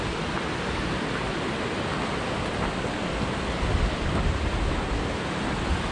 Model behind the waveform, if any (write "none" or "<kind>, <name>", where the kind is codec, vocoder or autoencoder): none